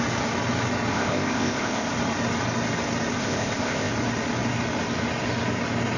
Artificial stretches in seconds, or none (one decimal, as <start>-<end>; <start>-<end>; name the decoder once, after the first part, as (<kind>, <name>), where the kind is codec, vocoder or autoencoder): 0.9-1.9 (codec, ZipCodec); 3.2-3.9